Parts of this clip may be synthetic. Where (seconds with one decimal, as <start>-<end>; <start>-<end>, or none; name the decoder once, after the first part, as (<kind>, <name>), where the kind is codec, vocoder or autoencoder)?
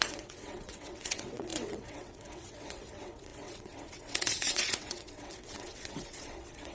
0.0-6.7 (vocoder, WaveNeXt)